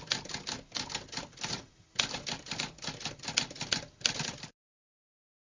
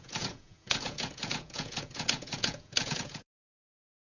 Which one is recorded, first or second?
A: first